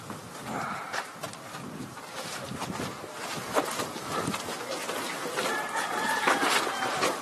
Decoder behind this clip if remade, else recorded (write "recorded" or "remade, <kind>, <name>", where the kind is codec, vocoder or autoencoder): remade, vocoder, BigVGAN v2